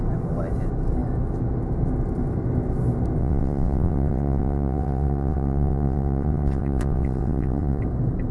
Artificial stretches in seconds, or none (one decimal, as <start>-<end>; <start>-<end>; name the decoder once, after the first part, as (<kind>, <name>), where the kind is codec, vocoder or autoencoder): 3.2-7.8 (vocoder, WaveNeXt)